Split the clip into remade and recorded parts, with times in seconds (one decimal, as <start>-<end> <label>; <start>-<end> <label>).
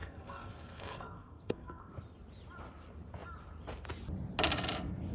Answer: 0.0-1.9 remade; 1.9-5.1 recorded